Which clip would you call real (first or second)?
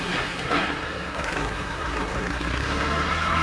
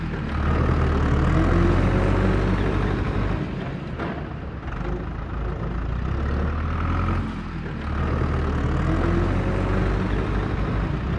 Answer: second